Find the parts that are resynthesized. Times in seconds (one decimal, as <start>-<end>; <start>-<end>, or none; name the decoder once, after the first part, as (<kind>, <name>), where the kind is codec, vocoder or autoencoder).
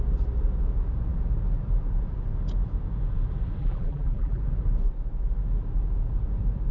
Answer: 3.6-4.4 (vocoder, BigVGAN v2)